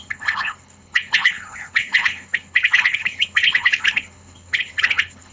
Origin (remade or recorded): remade